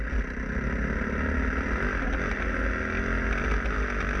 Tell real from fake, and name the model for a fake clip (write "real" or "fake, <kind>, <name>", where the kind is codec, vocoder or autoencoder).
real